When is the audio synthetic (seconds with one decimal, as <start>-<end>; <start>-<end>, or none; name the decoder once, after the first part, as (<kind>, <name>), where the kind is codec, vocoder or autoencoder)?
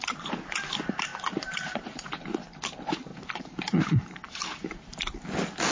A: 1.1-2.2 (vocoder, BigVGAN v2); 3.1-5.1